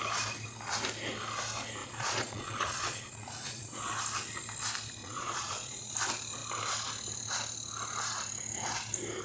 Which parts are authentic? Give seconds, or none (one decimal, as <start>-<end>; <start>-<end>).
0.0-1.8; 3.8-5.0; 5.9-9.2